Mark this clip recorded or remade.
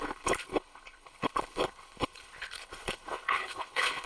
remade